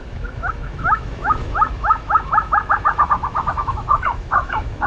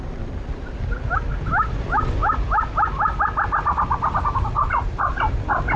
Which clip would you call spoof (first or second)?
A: first